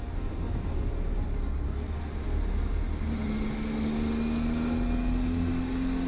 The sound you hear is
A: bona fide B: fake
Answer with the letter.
A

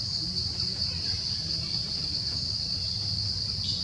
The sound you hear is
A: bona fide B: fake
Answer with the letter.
A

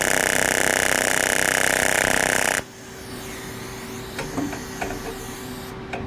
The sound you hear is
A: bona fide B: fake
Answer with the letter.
A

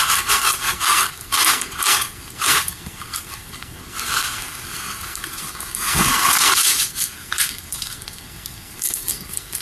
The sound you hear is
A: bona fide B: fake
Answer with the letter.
B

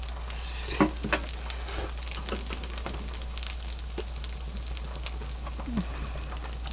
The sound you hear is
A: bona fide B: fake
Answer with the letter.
A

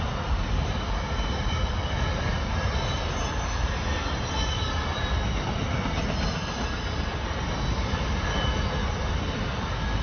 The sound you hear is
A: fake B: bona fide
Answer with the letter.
B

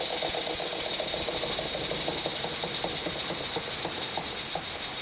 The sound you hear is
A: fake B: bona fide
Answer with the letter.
B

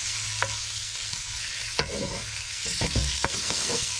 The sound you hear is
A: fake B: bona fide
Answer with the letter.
A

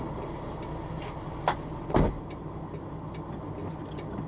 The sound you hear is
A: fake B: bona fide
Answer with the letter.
B